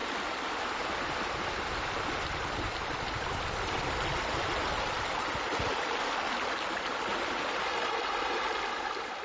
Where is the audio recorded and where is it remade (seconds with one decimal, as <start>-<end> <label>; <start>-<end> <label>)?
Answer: 0.0-9.2 recorded